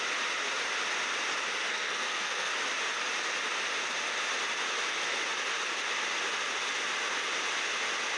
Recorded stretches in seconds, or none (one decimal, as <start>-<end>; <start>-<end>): 0.0-1.6; 2.5-8.2